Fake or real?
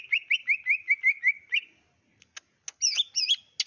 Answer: real